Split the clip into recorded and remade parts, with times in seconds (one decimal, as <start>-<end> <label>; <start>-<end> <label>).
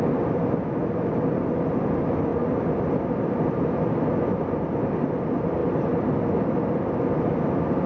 0.0-7.9 recorded